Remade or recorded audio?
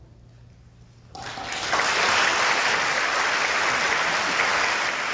recorded